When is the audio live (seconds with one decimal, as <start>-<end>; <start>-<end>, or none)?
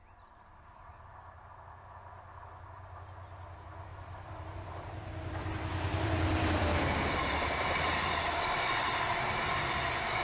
0.0-3.9; 9.0-10.2